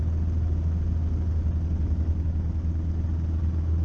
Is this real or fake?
real